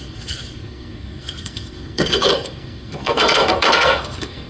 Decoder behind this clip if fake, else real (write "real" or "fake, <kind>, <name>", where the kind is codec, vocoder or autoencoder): fake, codec, SNAC